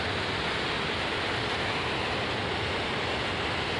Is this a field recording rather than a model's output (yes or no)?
yes